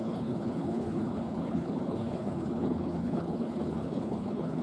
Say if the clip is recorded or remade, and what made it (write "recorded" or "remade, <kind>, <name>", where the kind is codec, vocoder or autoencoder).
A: remade, codec, HILCodec